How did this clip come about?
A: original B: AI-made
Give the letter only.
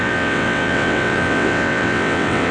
B